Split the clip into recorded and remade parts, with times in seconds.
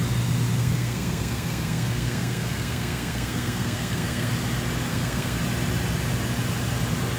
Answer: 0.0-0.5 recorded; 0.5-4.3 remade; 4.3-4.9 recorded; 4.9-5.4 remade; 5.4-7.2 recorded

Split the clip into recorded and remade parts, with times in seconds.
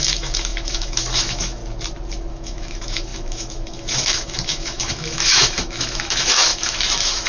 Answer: 0.0-1.6 remade; 1.6-2.3 recorded; 2.3-7.3 remade